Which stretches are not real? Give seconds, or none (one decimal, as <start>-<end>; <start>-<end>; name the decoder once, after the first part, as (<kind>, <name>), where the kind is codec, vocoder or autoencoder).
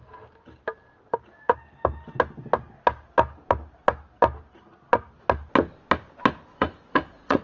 6.5-7.4 (vocoder, Vocos)